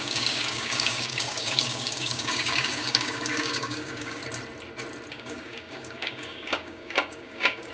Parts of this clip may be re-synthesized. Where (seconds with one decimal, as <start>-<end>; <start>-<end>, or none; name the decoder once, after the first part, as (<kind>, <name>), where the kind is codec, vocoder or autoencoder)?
0.0-4.2 (codec, DAC); 5.1-7.7

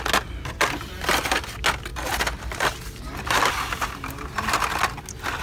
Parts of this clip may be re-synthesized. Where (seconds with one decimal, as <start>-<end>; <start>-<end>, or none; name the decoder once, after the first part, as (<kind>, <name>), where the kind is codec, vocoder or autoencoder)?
none

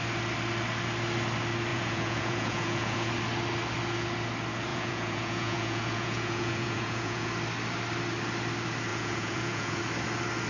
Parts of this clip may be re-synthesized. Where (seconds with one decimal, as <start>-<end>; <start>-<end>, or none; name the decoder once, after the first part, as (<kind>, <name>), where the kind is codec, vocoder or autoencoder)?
1.7-3.1 (vocoder, Vocos); 4.7-7.3; 8.9-9.8

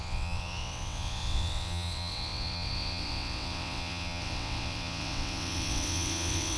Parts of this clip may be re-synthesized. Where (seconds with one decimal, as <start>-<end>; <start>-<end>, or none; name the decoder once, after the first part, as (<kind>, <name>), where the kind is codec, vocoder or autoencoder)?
0.0-6.6 (vocoder, WaveNeXt)

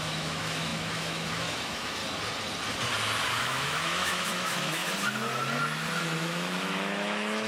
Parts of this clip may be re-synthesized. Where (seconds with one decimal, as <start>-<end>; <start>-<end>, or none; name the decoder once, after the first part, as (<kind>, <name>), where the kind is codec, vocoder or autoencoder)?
0.0-2.0 (autoencoder, DAC-VAE); 3.4-4.8; 6.0-7.5

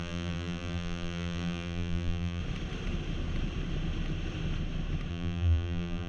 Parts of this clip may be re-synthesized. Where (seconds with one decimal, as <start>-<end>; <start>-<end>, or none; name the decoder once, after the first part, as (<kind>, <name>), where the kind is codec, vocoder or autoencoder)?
0.0-2.4 (vocoder, BigVGAN v2); 5.1-6.1